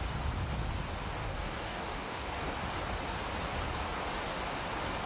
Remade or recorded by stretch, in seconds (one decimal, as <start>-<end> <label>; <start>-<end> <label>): 0.0-1.2 recorded; 1.2-2.5 remade; 2.5-5.1 recorded

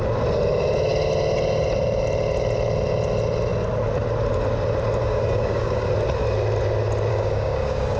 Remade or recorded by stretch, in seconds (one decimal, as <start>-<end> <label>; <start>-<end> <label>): 0.0-5.0 recorded; 5.0-5.9 remade; 5.9-7.1 recorded; 7.1-8.0 remade